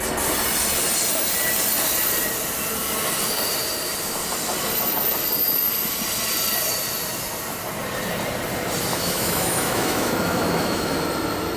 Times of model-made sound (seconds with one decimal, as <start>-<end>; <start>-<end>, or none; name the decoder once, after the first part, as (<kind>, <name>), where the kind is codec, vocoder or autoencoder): 8.9-11.0 (autoencoder, DAC-VAE)